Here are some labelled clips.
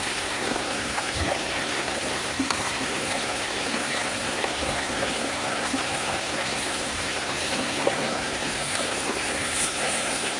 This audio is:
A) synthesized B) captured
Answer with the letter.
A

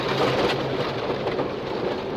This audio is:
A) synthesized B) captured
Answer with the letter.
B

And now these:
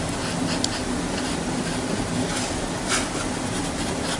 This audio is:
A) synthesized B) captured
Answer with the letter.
B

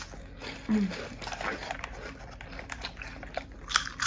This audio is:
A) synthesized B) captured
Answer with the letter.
B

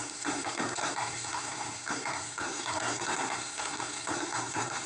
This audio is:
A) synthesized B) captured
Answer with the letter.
A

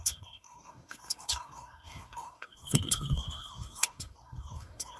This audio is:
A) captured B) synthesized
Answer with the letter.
B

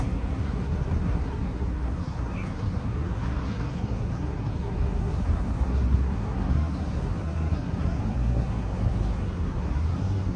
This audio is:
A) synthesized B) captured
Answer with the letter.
A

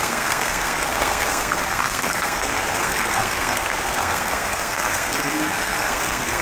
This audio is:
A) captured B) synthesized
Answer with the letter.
B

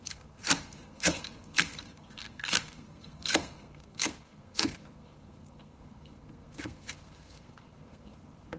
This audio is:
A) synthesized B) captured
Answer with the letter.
A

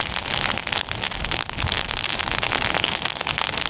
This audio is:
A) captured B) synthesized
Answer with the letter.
A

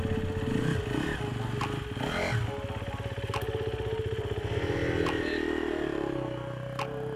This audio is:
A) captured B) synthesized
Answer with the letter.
A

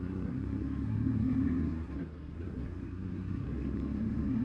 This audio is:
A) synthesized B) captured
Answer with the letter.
A